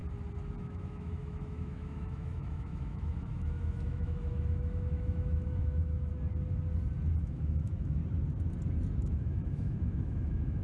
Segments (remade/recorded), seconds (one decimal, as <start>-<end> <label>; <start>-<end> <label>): 0.0-0.6 recorded; 0.6-6.1 remade; 6.1-7.2 recorded; 7.2-8.0 remade; 8.0-9.0 recorded; 9.0-10.6 remade